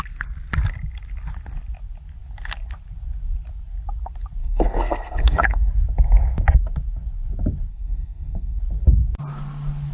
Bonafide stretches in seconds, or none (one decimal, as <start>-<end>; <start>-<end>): 0.0-4.4; 5.7-7.7; 8.6-9.9